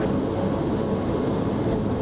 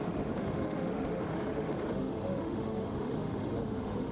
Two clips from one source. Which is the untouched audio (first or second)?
first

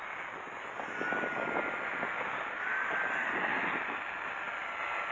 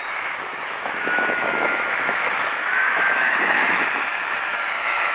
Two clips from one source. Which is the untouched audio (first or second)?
first